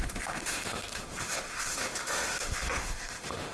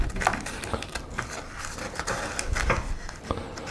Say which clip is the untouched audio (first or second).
second